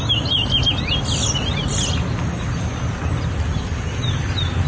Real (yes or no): yes